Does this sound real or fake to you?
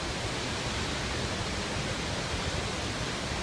real